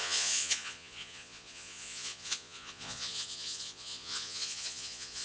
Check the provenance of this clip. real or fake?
fake